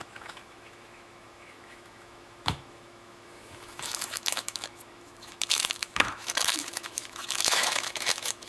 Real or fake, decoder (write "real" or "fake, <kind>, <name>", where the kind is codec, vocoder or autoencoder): fake, autoencoder, DAC-VAE